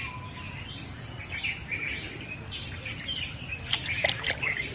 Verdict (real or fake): real